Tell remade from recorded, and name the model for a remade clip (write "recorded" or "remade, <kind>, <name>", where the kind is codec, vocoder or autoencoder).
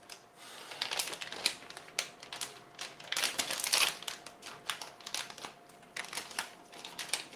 recorded